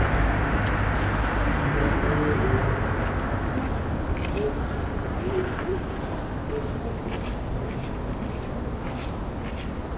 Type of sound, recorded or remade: recorded